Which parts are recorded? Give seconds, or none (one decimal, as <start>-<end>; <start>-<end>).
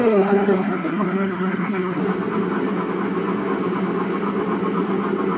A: 2.0-5.4